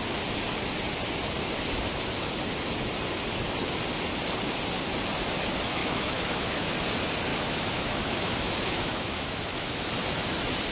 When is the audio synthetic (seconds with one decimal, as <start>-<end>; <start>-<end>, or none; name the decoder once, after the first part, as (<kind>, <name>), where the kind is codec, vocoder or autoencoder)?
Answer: 5.8-6.7 (autoencoder, DAC-VAE); 7.3-9.9

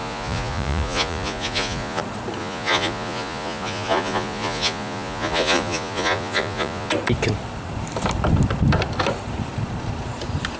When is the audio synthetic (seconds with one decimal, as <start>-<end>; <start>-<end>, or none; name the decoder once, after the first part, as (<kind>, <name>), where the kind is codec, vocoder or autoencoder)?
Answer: 0.0-2.0 (vocoder, Vocos); 2.4-6.9